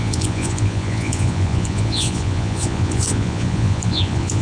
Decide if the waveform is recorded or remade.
remade